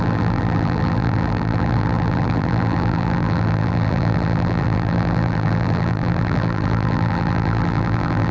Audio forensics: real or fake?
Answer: fake